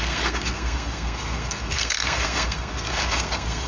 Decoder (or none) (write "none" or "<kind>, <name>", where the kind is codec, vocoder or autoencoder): codec, SNAC